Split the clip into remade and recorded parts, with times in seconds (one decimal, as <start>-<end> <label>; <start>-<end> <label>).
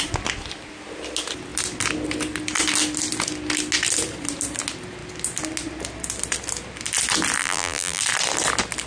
0.0-7.4 recorded; 7.4-8.0 remade; 8.0-8.9 recorded